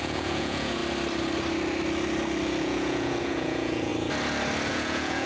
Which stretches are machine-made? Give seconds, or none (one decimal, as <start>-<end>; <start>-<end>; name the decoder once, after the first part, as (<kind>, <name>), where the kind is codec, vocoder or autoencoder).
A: 0.0-0.8 (vocoder, Vocos); 2.6-3.9; 4.7-5.3

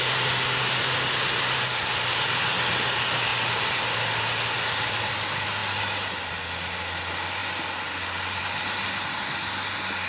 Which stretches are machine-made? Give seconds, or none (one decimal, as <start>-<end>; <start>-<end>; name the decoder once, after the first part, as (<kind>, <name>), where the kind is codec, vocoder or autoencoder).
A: none

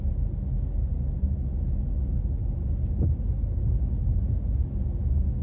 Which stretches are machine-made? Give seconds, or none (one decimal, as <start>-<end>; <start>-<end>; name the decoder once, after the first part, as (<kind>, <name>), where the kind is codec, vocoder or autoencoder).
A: none

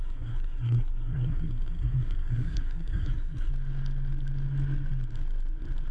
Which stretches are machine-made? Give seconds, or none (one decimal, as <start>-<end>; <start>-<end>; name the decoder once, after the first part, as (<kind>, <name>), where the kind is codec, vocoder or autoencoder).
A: 0.0-3.5 (codec, SNAC)

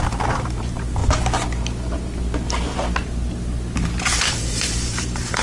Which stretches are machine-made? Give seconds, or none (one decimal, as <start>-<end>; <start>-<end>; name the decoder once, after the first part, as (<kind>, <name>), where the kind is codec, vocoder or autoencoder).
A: 0.0-1.0 (vocoder, BigVGAN v2); 4.2-5.4